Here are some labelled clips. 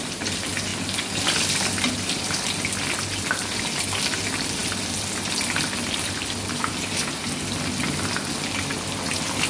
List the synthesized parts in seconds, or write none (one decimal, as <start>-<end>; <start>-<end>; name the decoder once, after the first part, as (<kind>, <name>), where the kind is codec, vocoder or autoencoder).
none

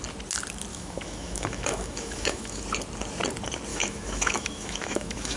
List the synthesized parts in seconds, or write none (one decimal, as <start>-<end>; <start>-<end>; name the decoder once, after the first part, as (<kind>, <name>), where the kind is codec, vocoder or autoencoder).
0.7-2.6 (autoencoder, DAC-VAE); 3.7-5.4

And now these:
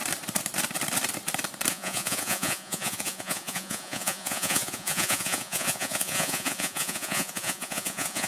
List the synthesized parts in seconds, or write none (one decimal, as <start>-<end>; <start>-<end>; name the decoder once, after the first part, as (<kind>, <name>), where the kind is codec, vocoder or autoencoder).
1.7-8.3 (vocoder, Vocos)

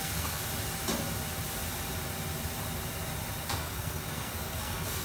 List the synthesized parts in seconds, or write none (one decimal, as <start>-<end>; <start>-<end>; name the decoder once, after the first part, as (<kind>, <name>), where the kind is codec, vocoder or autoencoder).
0.0-0.4 (codec, SNAC); 3.4-5.0

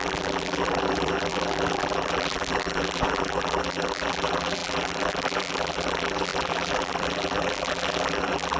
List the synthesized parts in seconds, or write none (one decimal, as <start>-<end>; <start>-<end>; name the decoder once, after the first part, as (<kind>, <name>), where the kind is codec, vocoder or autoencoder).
0.0-8.6 (vocoder, BigVGAN v2)